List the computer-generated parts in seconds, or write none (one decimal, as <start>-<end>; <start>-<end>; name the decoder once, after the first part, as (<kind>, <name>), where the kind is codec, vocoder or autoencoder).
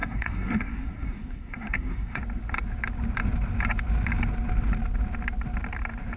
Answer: 0.0-2.2 (codec, SNAC)